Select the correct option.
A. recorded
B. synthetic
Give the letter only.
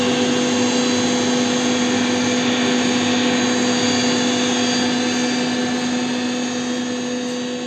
A